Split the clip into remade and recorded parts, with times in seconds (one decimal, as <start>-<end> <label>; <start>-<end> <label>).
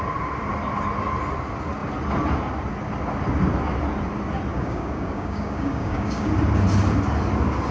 0.0-4.5 recorded; 4.5-6.3 remade; 6.3-7.7 recorded